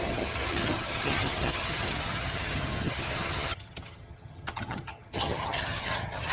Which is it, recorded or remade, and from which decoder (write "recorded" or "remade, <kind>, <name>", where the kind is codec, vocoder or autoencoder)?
remade, vocoder, HiFi-GAN